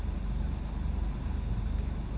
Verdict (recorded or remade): recorded